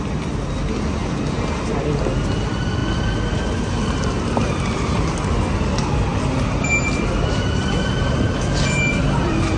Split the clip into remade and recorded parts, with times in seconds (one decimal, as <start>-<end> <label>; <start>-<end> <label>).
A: 0.0-9.6 recorded